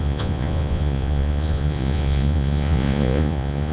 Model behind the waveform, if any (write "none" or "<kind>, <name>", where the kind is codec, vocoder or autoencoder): vocoder, Vocos